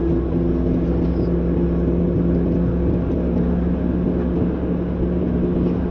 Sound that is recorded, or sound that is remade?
recorded